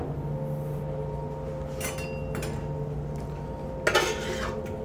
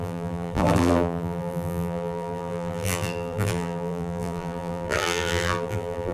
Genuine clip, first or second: first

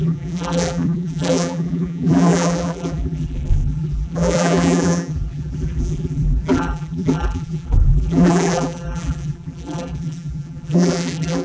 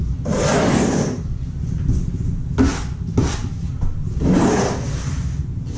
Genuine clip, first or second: second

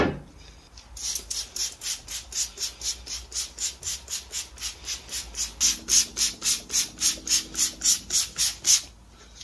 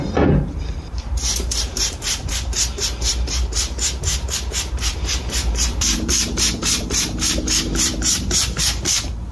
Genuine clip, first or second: first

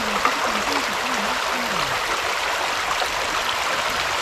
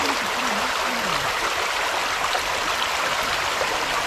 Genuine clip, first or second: first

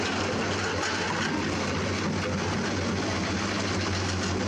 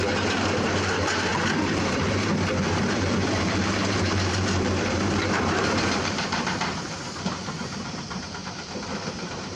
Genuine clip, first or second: first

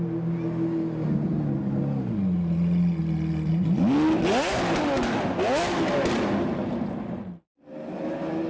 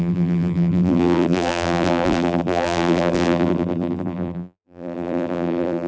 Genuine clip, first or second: first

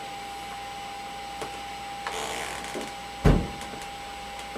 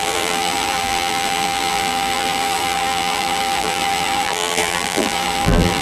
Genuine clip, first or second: first